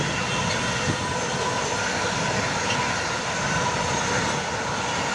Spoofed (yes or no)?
no